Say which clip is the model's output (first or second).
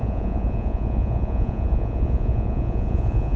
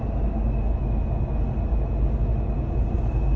first